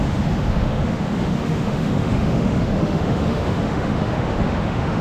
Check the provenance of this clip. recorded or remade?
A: remade